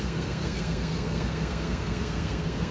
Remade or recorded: remade